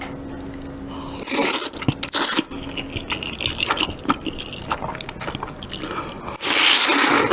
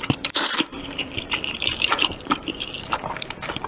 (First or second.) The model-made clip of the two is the second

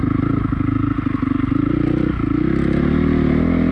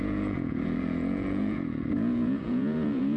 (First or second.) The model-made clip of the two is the second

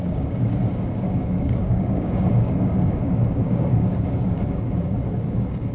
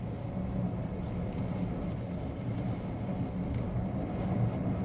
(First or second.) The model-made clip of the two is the first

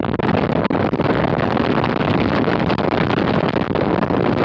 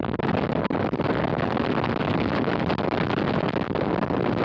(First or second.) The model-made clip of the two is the first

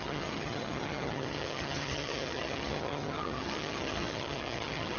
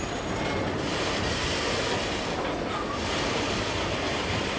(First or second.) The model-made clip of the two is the first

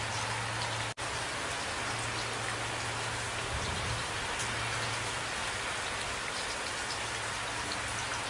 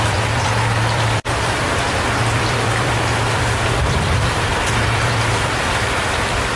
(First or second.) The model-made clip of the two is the second